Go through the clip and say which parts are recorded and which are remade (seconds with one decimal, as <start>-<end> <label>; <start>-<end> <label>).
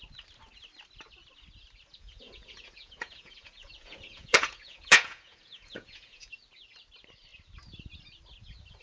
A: 0.0-1.9 recorded; 1.9-6.3 remade; 6.3-8.8 recorded